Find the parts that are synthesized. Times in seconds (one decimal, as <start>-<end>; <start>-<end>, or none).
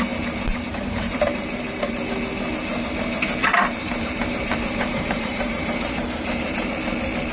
0.5-2.0; 3.4-6.7